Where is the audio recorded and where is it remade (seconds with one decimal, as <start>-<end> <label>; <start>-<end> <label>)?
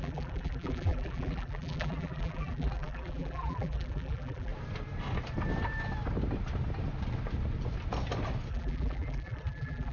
0.0-4.5 remade; 4.5-8.5 recorded; 8.5-9.9 remade